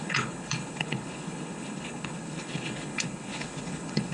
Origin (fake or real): fake